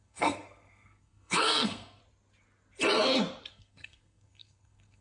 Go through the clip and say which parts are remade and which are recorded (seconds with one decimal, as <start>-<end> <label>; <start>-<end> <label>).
0.0-2.0 remade; 2.0-3.5 recorded; 3.5-5.0 remade